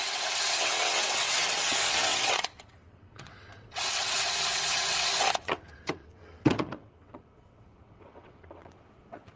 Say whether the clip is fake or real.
fake